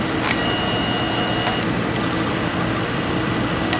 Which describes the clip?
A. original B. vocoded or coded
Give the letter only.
A